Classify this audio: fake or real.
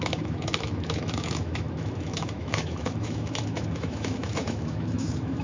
fake